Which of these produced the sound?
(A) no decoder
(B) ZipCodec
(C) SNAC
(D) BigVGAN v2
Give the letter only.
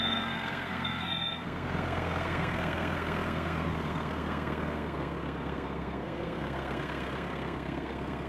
C